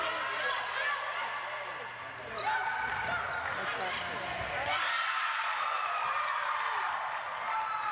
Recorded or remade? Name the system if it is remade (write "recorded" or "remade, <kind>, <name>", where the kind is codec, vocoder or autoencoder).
recorded